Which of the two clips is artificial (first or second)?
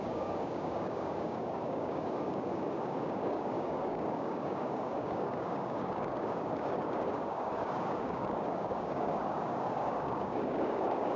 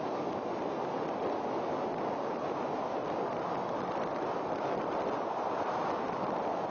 first